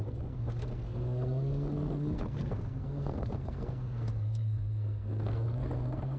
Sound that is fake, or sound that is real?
fake